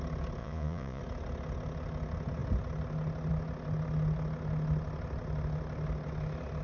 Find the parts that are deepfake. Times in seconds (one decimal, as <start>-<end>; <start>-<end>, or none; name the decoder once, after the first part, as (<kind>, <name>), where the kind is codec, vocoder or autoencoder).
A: 0.4-1.0 (vocoder, Vocos)